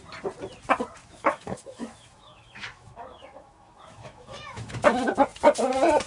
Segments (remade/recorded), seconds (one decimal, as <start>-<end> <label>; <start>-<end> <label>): 0.0-1.0 recorded; 1.0-4.7 remade; 4.7-6.1 recorded